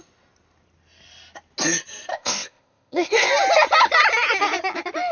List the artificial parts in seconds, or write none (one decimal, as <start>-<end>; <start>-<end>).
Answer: 2.1-3.3